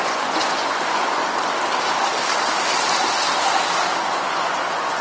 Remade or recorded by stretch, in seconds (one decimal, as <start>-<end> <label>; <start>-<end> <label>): 0.0-1.2 remade; 1.2-4.0 recorded; 4.0-5.0 remade